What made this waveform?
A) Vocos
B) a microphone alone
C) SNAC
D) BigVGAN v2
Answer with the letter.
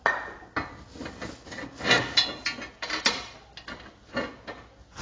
B